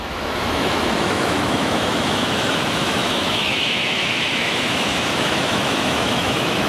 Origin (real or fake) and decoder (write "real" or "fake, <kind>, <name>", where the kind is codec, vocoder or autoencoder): fake, autoencoder, DAC-VAE